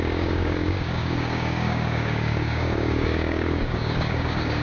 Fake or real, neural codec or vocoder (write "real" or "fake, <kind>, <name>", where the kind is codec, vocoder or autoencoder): fake, codec, DAC